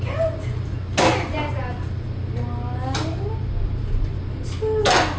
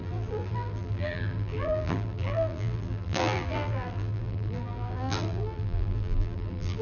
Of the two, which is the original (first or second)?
first